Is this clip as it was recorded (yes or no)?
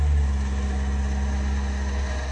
yes